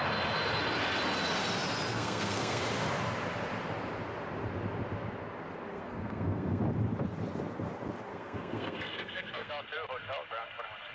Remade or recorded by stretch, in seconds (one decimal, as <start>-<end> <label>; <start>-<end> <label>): 0.0-1.9 recorded; 1.9-2.6 remade; 2.6-5.7 recorded; 5.7-6.6 remade; 6.6-8.1 recorded; 8.1-9.5 remade; 9.5-10.9 recorded